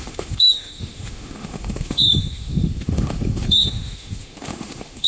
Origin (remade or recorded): remade